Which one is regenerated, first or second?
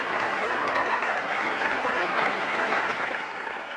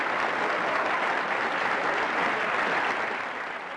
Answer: first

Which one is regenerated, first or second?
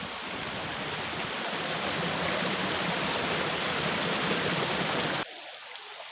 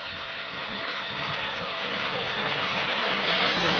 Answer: second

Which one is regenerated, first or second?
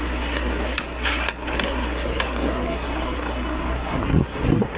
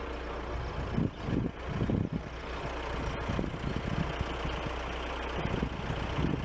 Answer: first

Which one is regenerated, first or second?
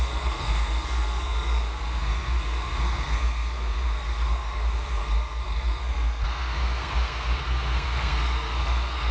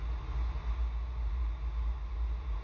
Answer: first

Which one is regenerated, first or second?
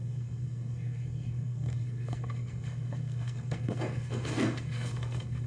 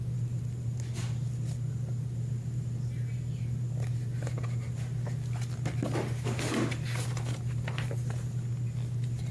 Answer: first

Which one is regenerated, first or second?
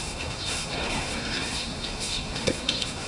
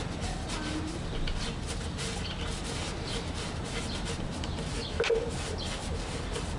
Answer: first